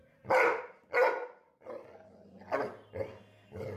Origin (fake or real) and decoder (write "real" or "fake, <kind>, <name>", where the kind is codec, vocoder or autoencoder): real